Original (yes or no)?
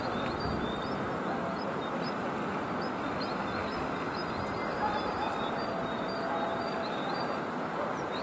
yes